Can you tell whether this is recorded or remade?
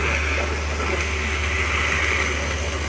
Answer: recorded